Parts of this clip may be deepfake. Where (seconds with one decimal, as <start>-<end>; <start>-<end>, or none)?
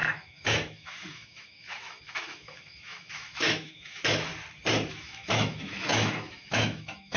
0.0-4.3; 4.9-7.2